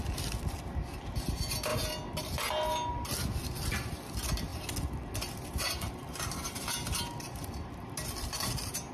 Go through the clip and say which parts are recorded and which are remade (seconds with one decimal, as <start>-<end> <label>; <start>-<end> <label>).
0.0-8.9 recorded